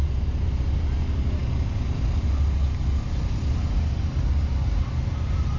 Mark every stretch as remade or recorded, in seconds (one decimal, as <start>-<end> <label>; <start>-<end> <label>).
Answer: 0.0-5.6 recorded